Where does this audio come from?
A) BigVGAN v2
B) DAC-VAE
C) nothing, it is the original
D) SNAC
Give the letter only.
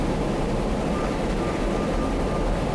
C